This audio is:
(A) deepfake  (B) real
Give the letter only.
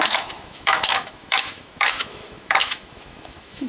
A